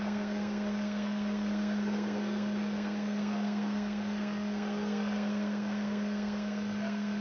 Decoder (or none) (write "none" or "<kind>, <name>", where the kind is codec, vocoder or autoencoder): codec, SNAC